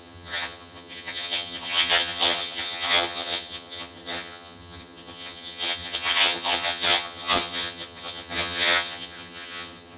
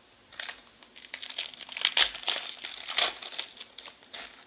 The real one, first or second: second